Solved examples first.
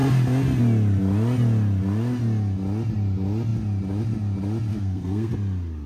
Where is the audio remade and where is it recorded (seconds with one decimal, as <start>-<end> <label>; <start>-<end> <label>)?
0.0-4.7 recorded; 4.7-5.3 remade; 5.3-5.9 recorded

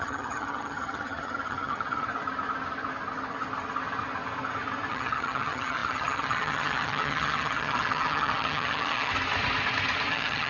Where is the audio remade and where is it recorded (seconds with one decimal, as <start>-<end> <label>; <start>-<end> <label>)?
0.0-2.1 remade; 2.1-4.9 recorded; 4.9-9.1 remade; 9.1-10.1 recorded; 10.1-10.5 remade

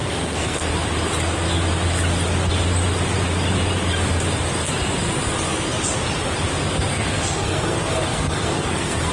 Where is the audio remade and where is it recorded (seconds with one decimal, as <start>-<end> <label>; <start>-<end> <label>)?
0.0-0.7 remade; 0.7-6.9 recorded; 6.9-9.1 remade

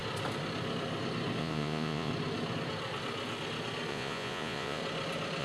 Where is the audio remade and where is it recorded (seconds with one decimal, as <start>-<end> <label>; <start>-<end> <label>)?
0.0-1.4 recorded; 1.4-2.1 remade; 2.1-3.9 recorded; 3.9-4.8 remade; 4.8-5.4 recorded

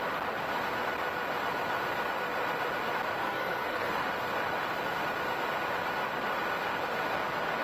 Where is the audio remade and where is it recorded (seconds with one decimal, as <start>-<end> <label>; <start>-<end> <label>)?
0.0-3.2 recorded; 3.2-4.0 remade; 4.0-7.6 recorded

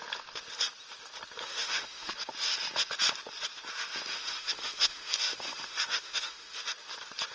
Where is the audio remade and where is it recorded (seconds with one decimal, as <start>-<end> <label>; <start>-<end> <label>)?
0.0-1.4 recorded; 1.4-2.1 remade; 2.1-4.1 recorded; 4.1-6.6 remade; 6.6-7.3 recorded